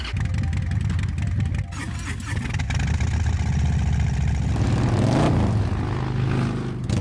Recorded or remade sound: recorded